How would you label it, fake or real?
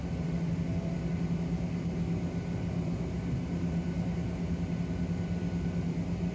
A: real